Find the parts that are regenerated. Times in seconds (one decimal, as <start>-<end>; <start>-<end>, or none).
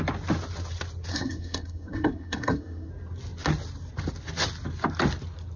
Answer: 1.1-2.9